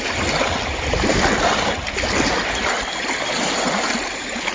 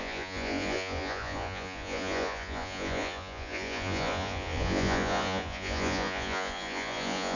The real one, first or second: first